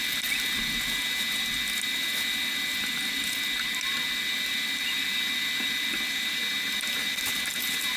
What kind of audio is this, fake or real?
real